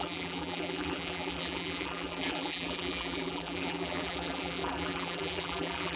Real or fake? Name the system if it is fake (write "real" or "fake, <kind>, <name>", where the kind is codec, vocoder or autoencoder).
fake, vocoder, BigVGAN v2